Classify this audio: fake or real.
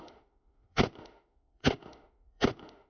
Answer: fake